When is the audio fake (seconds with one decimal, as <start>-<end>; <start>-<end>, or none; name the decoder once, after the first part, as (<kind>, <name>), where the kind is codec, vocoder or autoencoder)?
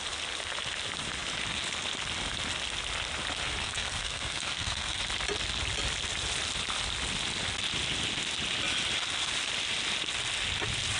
3.6-5.0 (codec, SNAC)